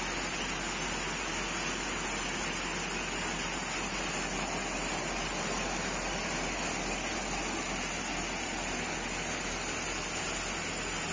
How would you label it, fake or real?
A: real